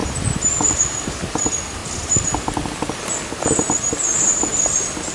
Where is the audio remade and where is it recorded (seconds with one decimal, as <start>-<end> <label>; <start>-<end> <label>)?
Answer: 0.0-5.1 recorded